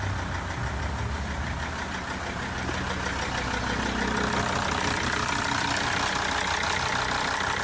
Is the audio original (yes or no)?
yes